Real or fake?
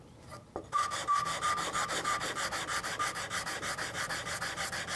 real